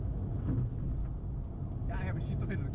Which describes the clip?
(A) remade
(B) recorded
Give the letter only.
B